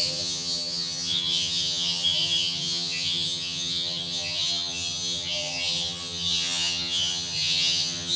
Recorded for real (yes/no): no